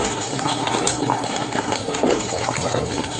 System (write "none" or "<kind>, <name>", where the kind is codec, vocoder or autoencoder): codec, SNAC